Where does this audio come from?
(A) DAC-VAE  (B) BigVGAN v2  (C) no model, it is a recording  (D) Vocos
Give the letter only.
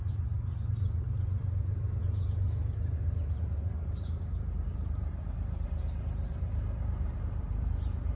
B